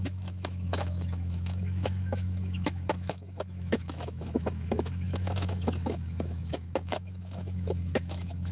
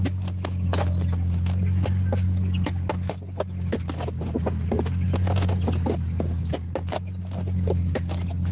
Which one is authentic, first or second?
second